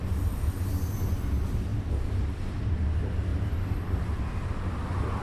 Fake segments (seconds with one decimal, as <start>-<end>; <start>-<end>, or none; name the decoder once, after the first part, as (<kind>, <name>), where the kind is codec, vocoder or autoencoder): 1.7-2.7 (vocoder, BigVGAN v2); 3.3-4.2